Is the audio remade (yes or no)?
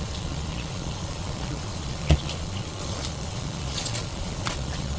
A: yes